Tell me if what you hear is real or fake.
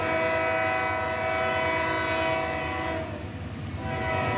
real